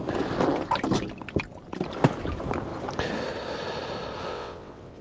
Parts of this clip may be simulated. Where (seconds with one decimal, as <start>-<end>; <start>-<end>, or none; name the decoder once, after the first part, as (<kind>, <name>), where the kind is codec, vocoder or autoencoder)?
4.3-5.0 (vocoder, WaveNeXt)